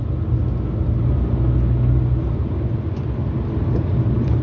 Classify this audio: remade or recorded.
recorded